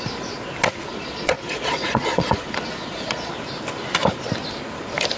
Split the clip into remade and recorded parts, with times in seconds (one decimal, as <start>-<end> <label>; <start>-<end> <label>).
0.0-0.9 recorded; 0.9-3.3 remade; 3.3-5.2 recorded